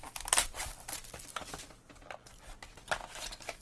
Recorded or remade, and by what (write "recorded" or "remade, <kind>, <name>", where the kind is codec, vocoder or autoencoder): recorded